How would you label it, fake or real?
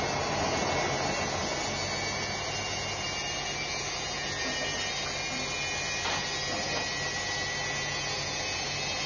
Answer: real